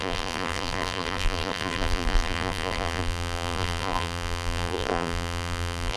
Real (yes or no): no